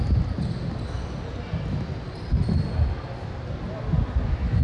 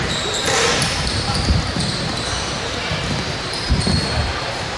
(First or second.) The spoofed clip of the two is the second